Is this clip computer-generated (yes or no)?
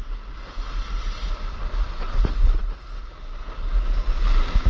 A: no